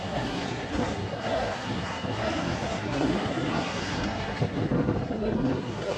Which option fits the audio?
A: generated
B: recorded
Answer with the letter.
A